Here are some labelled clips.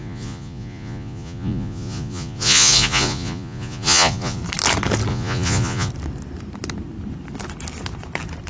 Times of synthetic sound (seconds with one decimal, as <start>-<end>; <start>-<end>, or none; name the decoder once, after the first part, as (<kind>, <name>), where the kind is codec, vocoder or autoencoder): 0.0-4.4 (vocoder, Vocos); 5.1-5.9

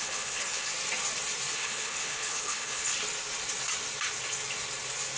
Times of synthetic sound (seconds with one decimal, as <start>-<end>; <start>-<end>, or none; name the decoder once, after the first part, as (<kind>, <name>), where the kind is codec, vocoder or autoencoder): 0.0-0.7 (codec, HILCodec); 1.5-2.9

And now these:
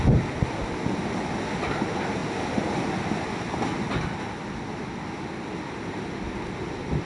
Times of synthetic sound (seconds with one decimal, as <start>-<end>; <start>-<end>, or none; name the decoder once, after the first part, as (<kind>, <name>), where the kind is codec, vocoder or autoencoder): none

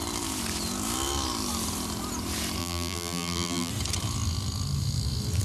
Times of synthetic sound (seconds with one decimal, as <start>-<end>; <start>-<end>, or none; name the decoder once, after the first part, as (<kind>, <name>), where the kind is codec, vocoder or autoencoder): 2.6-3.7 (vocoder, BigVGAN v2)

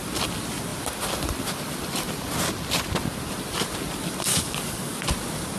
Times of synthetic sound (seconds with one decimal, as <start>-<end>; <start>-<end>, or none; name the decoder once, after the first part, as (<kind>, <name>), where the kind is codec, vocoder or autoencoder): 4.3-5.0 (codec, DAC)

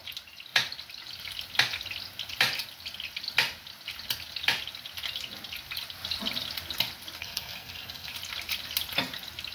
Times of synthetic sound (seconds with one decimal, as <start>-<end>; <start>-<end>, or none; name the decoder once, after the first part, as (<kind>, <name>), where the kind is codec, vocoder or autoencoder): 7.2-8.1 (codec, SNAC)

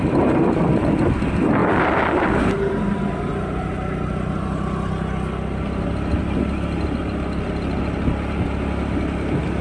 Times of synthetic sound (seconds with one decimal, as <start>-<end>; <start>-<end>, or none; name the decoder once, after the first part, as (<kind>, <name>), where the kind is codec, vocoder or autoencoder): none

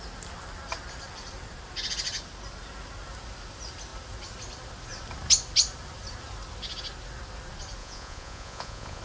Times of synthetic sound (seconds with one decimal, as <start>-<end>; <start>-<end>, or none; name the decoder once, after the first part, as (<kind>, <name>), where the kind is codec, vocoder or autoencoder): 7.8-9.0 (vocoder, Vocos)